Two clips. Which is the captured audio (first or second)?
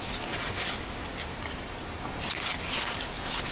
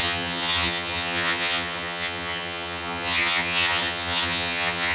first